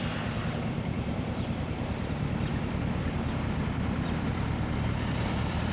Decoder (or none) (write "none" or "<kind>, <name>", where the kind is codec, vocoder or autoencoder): vocoder, BigVGAN v2